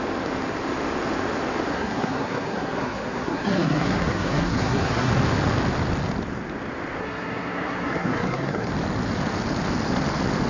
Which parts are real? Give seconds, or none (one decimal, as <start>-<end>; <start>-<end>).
0.0-1.7; 5.1-7.0; 8.7-10.5